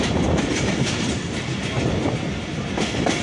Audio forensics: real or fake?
real